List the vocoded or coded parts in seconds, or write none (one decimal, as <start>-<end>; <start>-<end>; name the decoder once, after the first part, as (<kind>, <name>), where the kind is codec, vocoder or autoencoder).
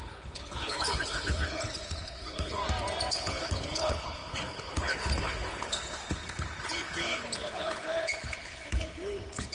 0.0-2.6 (codec, HILCodec); 3.1-9.5